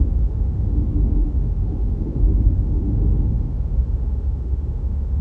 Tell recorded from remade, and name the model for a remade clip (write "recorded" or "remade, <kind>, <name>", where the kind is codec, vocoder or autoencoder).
remade, autoencoder, DAC-VAE